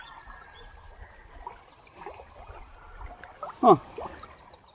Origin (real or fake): real